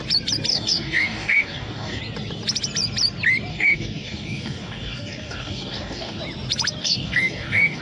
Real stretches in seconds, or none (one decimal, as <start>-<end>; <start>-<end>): 0.0-0.5; 2.0-3.5; 6.2-6.8